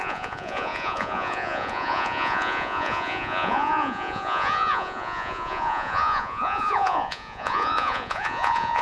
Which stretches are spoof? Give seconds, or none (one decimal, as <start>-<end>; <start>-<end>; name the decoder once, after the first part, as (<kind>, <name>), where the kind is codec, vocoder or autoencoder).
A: 0.0-8.8 (vocoder, Vocos)